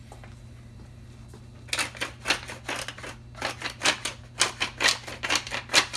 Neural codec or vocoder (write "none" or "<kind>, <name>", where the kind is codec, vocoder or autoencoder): none